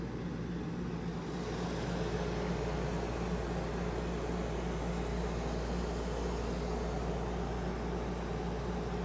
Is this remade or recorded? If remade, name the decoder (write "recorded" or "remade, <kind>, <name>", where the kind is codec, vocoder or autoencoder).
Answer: recorded